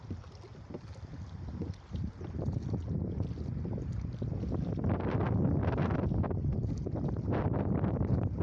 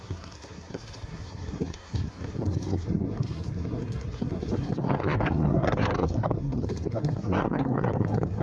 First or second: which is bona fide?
first